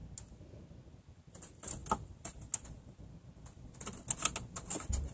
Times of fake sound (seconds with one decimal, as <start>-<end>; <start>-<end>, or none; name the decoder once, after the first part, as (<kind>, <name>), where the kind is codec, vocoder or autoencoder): none